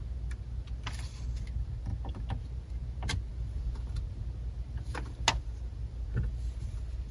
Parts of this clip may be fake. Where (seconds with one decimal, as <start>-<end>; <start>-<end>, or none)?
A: none